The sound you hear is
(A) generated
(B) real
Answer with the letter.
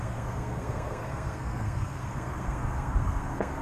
A